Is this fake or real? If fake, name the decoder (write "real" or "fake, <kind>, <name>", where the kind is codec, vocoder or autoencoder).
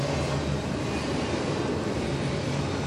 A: real